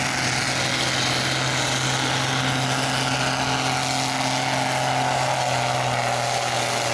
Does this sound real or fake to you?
real